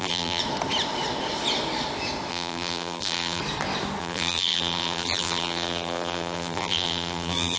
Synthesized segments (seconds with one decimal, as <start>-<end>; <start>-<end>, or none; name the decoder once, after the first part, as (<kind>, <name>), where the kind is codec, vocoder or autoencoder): 0.0-0.4 (vocoder, BigVGAN v2); 2.3-3.4; 4.0-7.6